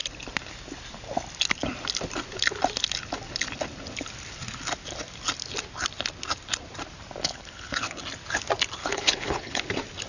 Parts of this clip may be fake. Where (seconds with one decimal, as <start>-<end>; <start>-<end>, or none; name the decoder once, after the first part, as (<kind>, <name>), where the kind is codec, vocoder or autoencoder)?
7.2-8.0 (codec, HILCodec); 8.8-9.6